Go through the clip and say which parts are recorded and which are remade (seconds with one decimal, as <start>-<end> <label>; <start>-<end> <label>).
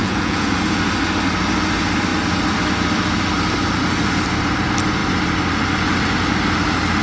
0.0-0.8 remade; 0.8-7.0 recorded